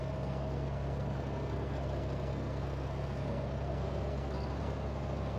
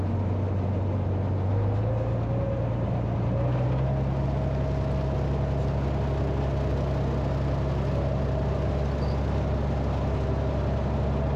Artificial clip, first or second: first